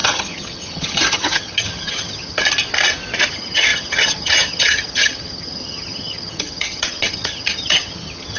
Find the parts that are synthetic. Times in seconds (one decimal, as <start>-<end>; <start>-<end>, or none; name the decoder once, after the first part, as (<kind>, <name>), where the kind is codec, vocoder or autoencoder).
0.0-2.4 (vocoder, HiFi-GAN); 3.3-8.4